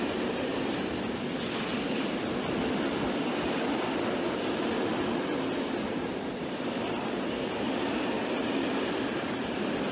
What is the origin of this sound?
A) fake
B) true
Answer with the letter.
B